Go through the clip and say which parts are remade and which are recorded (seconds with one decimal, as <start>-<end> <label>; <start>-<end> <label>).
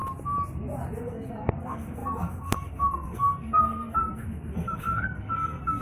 0.0-1.0 recorded; 1.0-5.8 remade